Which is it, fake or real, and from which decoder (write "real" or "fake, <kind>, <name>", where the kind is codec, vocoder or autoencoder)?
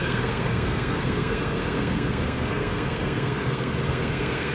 fake, codec, SNAC